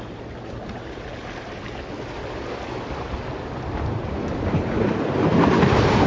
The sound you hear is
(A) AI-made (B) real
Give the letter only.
B